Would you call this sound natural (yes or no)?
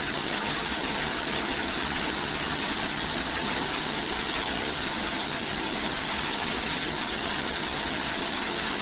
no